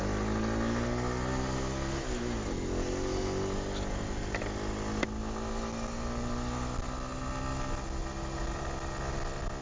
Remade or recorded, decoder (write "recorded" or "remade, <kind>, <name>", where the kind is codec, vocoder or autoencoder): recorded